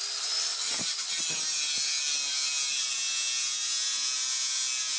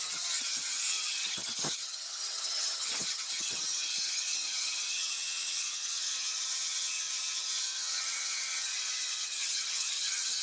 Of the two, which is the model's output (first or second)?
second